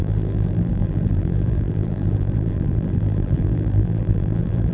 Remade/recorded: remade